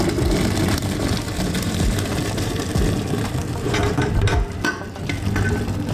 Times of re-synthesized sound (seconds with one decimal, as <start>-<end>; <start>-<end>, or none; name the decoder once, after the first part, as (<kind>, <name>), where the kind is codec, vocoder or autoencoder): 0.8-4.3 (vocoder, BigVGAN v2)